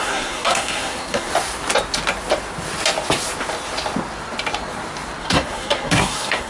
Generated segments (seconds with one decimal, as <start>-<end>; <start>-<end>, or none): 0.0-1.3; 5.2-6.5